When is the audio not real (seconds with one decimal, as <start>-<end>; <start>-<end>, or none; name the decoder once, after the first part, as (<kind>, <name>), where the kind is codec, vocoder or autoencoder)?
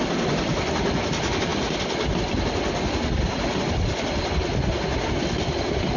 none